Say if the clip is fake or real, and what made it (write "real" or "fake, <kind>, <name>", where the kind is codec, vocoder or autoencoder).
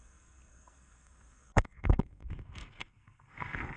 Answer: fake, codec, SNAC